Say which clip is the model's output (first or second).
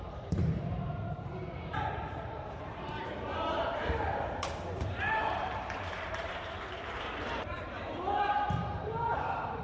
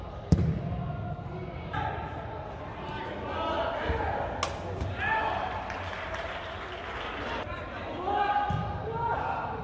first